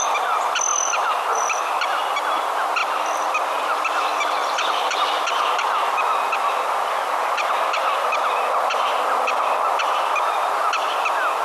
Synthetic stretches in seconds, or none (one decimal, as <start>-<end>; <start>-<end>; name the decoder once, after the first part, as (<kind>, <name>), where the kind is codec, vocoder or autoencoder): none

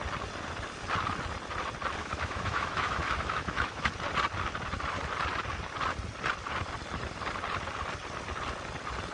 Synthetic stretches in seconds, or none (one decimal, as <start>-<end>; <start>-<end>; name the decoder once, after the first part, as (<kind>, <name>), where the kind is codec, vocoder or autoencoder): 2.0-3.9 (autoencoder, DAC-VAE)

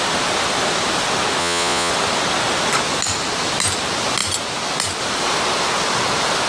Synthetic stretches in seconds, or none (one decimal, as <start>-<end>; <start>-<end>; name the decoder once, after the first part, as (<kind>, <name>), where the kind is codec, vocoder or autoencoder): 1.4-1.9 (vocoder, Vocos)